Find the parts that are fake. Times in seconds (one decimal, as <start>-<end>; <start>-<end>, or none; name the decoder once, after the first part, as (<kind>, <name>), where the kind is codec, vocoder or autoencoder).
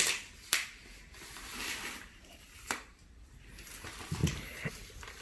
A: 1.5-3.0 (vocoder, BigVGAN v2); 4.2-5.2